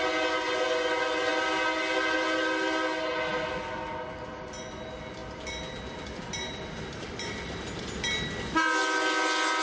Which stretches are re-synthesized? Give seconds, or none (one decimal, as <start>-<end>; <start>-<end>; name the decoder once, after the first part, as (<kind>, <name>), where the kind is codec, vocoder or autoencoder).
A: none